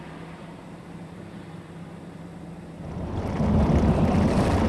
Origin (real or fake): fake